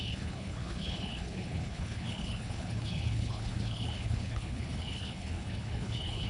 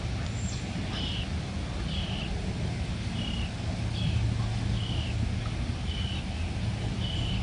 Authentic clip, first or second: second